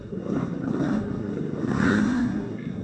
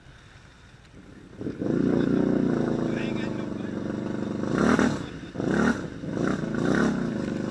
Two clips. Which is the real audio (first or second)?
second